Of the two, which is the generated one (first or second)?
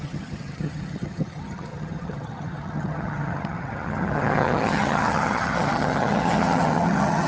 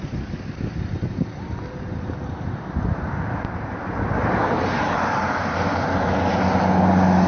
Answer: first